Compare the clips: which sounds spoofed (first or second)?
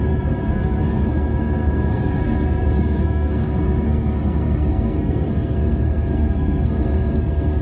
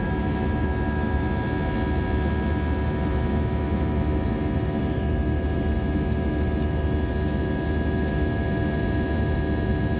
first